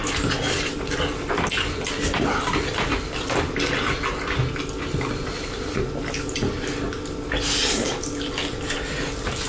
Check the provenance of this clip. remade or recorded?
recorded